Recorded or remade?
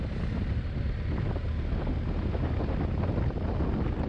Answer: recorded